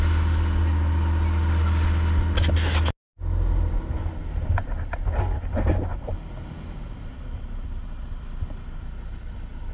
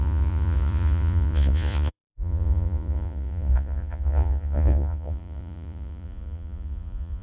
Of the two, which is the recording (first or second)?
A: first